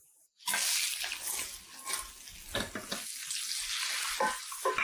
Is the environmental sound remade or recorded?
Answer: recorded